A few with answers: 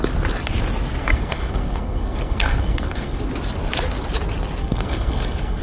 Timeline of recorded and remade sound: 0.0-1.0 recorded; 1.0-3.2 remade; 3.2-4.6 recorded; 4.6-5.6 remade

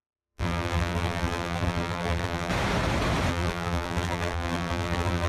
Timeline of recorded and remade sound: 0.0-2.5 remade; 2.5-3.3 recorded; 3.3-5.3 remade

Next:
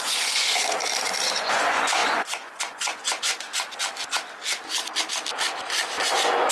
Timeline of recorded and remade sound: 0.0-0.8 remade; 0.8-1.4 recorded; 1.4-3.5 remade; 3.5-6.1 recorded; 6.1-6.5 remade

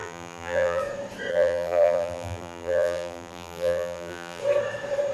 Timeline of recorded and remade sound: 0.0-0.8 remade; 0.8-1.3 recorded; 1.3-4.4 remade; 4.4-5.1 recorded